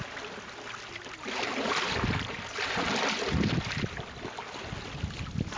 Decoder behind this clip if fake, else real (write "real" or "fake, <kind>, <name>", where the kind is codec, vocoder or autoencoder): real